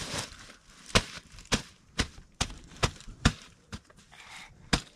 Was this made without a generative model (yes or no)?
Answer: no